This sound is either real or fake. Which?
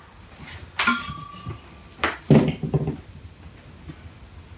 real